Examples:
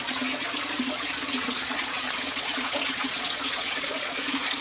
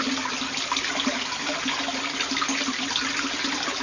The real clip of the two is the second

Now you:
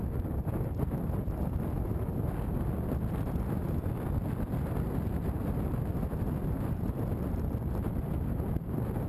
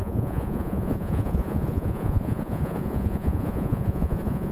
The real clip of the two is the first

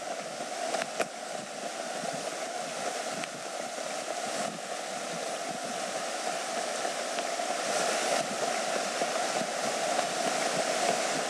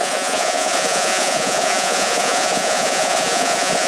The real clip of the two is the first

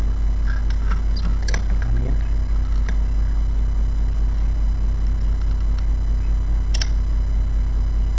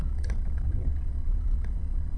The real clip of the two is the first